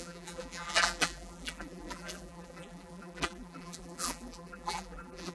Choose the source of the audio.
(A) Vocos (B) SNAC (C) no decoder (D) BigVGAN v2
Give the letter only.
D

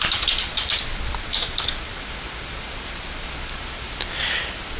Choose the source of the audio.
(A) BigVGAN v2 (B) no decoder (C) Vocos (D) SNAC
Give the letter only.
A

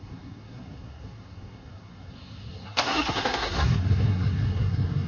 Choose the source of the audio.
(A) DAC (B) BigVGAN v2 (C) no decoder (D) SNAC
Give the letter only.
D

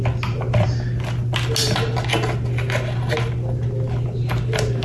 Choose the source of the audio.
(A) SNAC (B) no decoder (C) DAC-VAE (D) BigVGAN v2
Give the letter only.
B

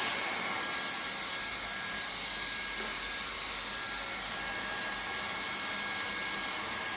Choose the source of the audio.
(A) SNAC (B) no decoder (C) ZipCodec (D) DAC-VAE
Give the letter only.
B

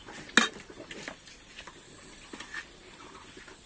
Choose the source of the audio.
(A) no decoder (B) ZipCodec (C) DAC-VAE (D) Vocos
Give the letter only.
A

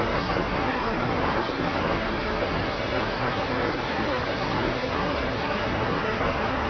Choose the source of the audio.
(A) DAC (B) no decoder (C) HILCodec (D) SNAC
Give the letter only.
D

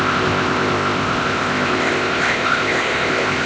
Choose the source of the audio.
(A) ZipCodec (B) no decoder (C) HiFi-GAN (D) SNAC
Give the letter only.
A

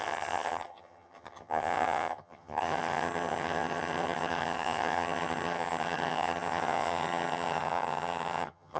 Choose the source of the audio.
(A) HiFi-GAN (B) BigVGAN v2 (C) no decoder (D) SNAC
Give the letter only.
A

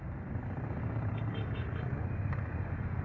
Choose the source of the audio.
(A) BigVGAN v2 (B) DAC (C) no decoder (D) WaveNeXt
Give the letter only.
B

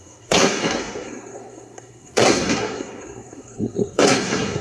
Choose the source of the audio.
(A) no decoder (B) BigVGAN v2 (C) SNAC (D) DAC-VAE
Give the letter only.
C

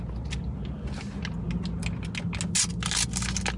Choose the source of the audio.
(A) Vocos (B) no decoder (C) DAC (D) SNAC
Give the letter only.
B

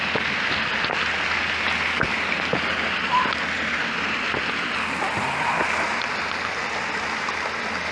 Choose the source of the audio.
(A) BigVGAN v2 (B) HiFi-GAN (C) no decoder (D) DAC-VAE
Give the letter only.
C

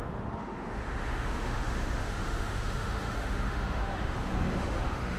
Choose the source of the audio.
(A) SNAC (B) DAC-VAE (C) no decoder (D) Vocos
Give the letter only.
B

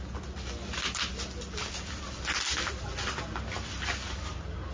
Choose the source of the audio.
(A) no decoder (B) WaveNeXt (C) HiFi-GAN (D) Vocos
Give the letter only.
A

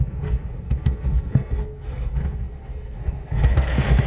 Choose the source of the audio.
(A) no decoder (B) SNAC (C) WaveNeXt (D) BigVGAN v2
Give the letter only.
B